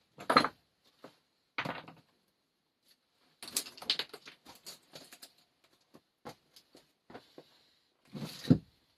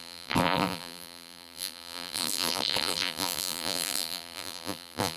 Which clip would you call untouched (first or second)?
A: first